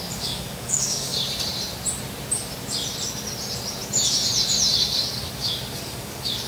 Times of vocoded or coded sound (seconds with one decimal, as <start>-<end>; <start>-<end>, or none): 0.0-1.1; 4.8-6.5